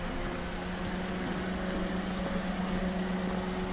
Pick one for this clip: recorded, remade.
recorded